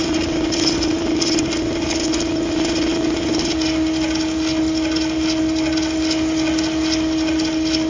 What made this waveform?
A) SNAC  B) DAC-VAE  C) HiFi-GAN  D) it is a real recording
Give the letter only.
D